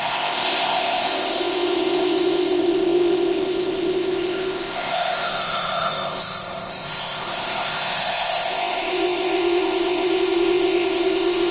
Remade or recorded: remade